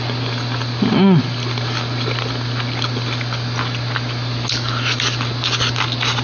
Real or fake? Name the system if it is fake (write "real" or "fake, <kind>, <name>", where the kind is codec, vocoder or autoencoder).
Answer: real